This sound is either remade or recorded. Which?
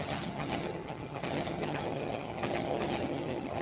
remade